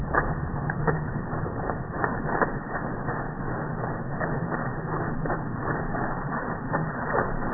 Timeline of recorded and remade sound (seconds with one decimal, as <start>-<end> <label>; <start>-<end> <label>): 0.0-2.1 remade; 2.1-4.1 recorded; 4.1-4.7 remade; 4.7-5.6 recorded; 5.6-7.5 remade